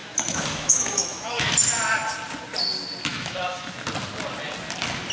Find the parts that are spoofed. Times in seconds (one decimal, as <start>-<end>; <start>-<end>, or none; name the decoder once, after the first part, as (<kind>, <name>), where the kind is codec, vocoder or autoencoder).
0.0-1.5 (autoencoder, DAC-VAE); 3.1-3.7